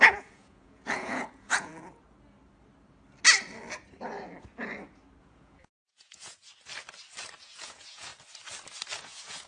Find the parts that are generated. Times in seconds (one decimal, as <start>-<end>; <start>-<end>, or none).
0.0-1.7; 5.2-6.4; 7.4-8.1; 9.0-9.5